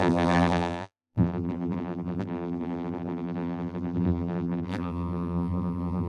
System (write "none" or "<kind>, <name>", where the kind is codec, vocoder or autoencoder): vocoder, BigVGAN v2